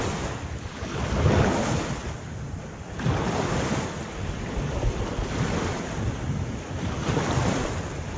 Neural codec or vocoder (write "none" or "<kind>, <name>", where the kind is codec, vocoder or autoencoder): none